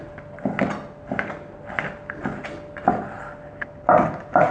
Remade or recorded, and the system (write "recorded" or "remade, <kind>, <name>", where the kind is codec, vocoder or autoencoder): recorded